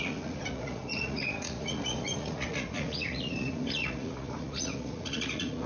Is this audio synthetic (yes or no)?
yes